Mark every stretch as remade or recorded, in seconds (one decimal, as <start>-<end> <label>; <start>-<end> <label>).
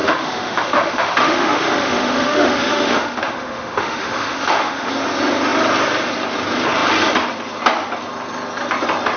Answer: 0.0-4.9 remade; 4.9-9.2 recorded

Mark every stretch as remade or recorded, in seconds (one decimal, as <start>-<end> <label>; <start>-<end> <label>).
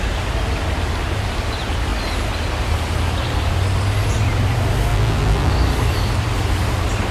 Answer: 0.0-4.9 recorded; 4.9-5.5 remade; 5.5-7.1 recorded